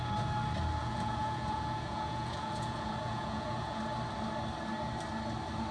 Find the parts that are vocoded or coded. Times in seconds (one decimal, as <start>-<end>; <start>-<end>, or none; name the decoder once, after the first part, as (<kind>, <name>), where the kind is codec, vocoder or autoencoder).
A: 0.8-3.8 (vocoder, Vocos)